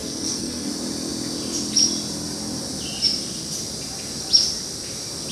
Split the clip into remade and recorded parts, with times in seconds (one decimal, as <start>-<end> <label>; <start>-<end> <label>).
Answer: 0.0-0.7 remade; 0.7-5.3 recorded